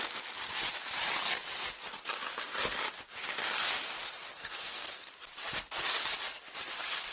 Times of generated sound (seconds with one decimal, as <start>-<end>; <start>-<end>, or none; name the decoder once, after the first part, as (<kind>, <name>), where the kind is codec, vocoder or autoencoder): 4.3-5.1 (codec, SNAC)